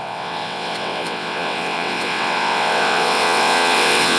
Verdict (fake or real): fake